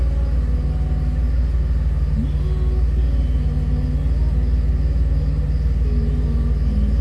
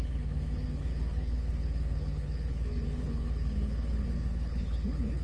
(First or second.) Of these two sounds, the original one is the first